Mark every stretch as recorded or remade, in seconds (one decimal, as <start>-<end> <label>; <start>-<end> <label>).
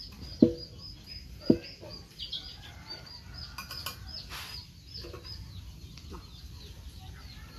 0.0-7.6 recorded